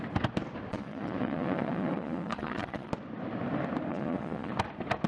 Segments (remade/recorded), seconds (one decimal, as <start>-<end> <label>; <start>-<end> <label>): 0.0-0.7 recorded; 0.7-2.9 remade; 2.9-3.9 recorded; 3.9-4.5 remade; 4.5-5.1 recorded